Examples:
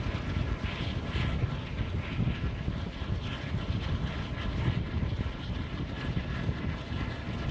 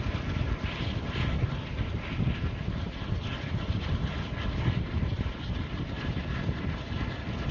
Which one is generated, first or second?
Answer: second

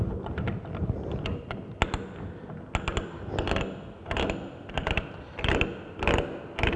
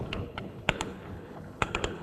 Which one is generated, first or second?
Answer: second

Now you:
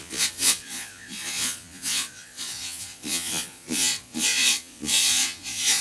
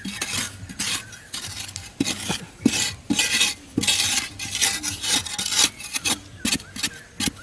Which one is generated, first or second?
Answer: first